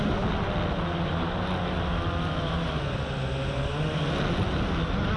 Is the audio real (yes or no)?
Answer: yes